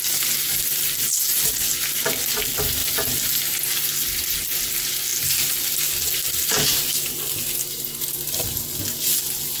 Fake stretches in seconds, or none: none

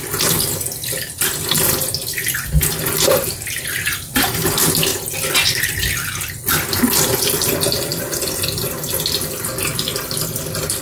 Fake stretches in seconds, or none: none

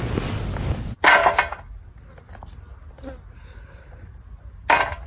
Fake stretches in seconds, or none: none